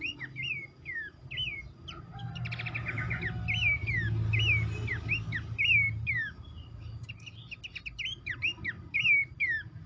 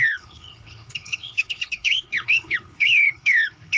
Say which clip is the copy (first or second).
second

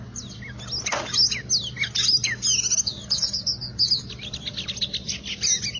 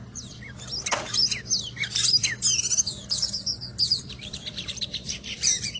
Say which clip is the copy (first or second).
second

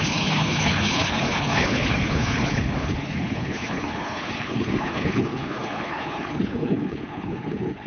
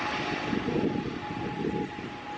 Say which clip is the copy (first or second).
first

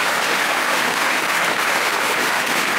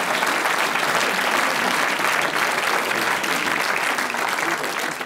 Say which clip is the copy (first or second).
first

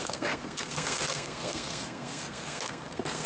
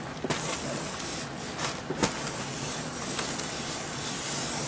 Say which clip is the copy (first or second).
first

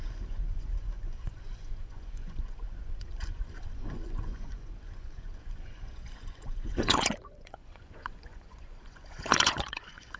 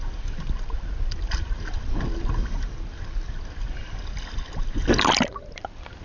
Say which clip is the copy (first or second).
first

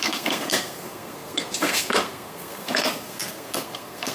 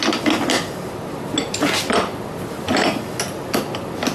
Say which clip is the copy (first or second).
first